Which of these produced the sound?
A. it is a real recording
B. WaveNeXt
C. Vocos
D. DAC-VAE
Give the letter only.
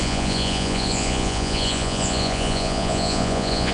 C